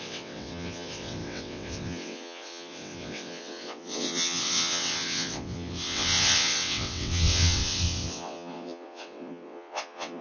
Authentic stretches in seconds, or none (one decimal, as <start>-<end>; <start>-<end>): none